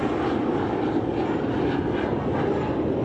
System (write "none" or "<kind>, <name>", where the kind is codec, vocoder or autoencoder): none